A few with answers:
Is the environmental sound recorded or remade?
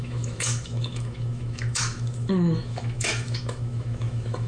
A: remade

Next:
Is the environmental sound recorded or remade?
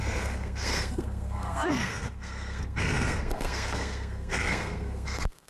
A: remade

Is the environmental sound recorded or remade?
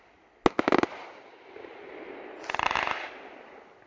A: recorded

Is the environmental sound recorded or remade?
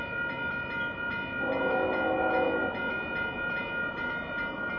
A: recorded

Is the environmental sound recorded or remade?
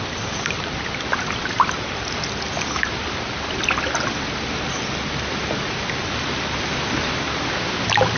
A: recorded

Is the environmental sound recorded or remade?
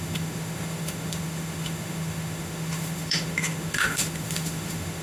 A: remade